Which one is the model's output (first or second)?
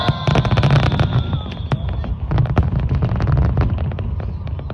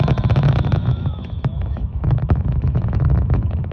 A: second